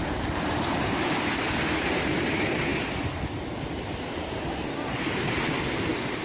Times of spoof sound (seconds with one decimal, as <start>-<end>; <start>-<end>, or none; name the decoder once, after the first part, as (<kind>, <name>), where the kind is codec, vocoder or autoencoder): 0.0-1.9 (vocoder, BigVGAN v2)

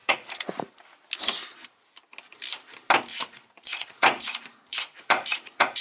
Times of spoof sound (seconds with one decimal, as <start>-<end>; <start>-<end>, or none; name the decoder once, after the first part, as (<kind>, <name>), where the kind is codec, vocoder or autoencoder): 0.0-0.7 (vocoder, Vocos); 3.1-5.8